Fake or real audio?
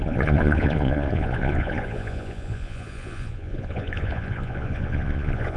fake